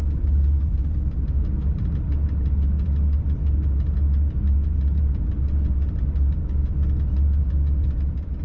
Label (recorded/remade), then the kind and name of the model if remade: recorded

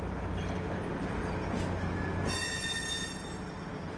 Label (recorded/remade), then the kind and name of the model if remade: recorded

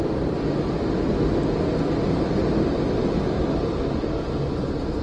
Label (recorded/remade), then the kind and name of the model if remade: recorded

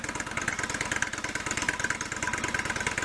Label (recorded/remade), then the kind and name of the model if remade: recorded